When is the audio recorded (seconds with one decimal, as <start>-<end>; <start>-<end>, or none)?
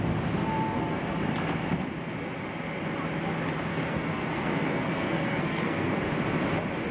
0.0-3.7; 6.0-6.9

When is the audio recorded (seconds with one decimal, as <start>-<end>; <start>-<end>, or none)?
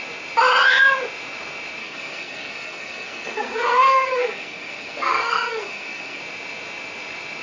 0.0-1.8; 6.2-7.4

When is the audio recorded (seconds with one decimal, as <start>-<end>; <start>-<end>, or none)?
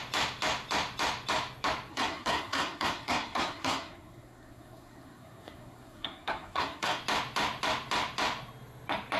0.0-1.9; 7.0-9.2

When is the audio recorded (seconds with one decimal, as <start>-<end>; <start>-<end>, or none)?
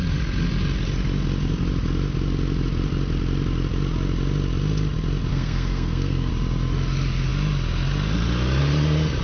0.0-5.3; 6.3-9.2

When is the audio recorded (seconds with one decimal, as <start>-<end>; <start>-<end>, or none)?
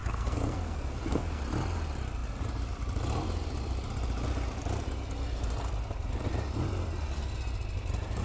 1.4-8.2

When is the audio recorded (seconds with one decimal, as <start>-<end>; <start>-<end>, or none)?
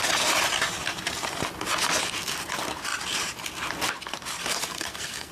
0.0-4.4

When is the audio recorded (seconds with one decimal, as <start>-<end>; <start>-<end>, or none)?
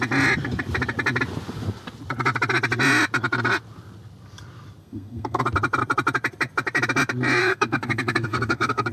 0.0-4.8; 5.4-7.4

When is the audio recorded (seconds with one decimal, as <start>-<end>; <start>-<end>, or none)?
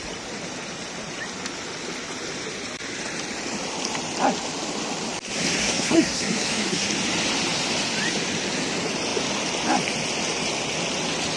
0.0-5.6; 6.9-11.4